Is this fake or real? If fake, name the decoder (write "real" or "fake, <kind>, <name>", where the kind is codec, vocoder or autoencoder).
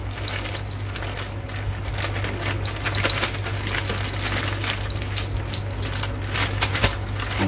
real